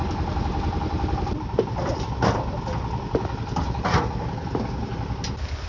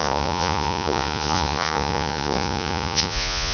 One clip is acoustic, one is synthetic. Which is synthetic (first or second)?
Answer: second